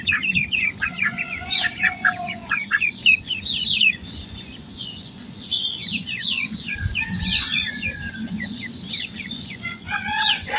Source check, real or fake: fake